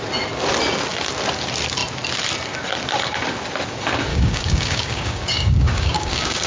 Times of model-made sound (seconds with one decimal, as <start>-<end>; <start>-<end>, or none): 4.1-6.5